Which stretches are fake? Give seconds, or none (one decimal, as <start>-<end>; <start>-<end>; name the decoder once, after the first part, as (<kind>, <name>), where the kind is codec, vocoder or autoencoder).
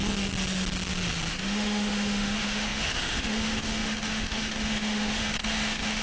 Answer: 1.3-6.0 (autoencoder, DAC-VAE)